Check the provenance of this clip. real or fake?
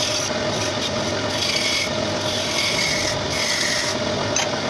real